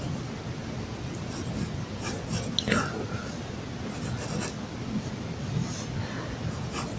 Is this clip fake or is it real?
real